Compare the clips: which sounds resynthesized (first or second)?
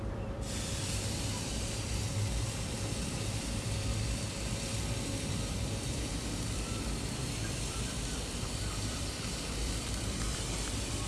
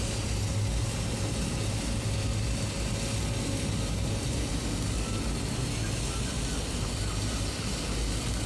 first